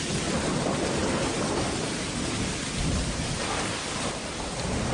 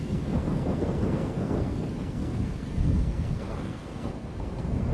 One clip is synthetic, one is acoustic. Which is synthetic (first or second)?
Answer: second